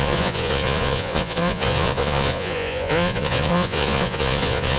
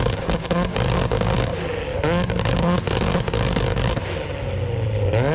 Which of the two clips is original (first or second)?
second